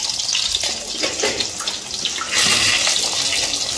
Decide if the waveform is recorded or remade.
recorded